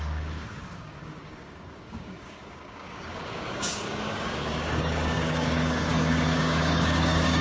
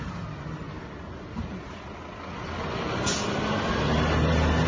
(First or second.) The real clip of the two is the second